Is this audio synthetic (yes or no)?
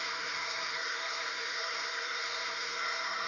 yes